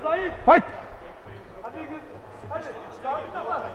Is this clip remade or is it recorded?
remade